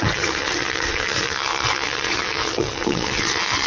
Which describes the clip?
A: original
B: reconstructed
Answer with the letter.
B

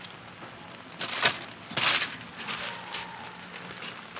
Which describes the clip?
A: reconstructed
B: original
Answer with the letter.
B